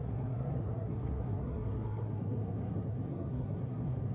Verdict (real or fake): fake